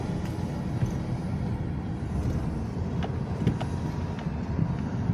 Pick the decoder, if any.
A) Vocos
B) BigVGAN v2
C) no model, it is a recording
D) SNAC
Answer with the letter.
C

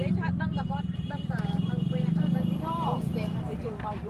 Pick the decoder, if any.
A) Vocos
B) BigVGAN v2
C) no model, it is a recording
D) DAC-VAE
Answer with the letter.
B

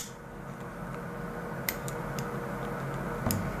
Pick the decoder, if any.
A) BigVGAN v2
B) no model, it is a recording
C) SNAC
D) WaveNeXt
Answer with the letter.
B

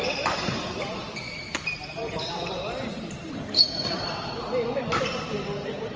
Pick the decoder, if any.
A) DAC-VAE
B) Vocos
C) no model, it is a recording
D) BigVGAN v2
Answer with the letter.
D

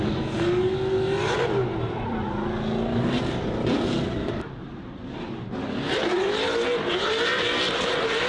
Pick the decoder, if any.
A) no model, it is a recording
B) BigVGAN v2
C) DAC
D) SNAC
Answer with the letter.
A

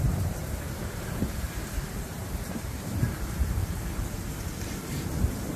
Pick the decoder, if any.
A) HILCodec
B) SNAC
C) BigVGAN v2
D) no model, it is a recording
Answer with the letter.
C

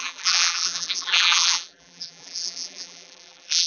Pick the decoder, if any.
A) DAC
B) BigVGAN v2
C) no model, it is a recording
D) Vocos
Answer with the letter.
B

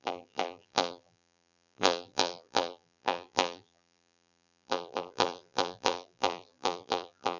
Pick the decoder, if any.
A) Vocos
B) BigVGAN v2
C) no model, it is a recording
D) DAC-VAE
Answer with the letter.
B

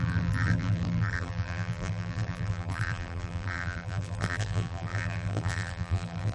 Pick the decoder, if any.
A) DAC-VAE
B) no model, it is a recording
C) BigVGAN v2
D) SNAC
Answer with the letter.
C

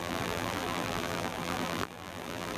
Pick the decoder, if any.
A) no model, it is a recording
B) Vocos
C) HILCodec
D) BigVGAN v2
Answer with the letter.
D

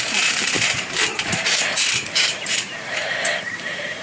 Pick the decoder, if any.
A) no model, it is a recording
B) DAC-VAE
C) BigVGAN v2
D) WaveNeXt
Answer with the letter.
C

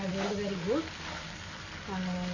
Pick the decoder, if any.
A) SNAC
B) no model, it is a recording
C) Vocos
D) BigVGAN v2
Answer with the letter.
B